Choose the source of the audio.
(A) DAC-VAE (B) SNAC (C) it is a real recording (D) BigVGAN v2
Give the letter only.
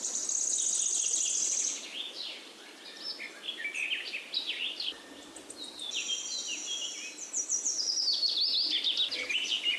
C